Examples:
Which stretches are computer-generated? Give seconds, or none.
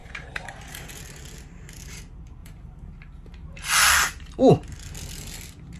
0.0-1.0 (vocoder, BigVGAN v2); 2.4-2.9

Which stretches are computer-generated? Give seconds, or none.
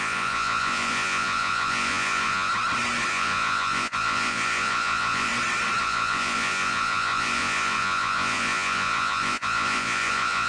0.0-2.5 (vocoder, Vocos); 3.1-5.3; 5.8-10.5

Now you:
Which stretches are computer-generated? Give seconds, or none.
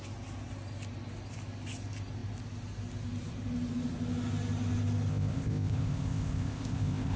5.1-7.2 (codec, ZipCodec)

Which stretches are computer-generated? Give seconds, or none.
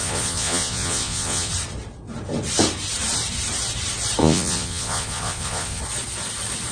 0.0-1.5 (vocoder, Vocos); 4.2-5.8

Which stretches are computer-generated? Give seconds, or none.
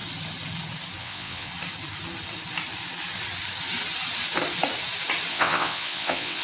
1.0-1.5 (vocoder, WaveNeXt); 5.3-6.4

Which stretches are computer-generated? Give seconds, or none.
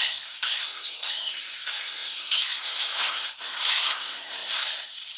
0.0-5.2 (codec, SNAC)